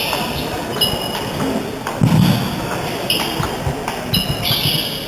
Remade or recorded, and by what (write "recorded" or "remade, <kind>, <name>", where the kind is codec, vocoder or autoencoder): recorded